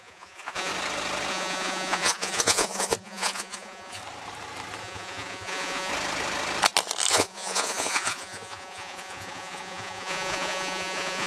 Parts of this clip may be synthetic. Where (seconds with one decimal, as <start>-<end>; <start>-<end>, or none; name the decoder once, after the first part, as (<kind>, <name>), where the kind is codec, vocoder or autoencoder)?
0.0-0.7 (vocoder, Vocos); 1.3-4.0; 4.8-5.9; 7.1-11.3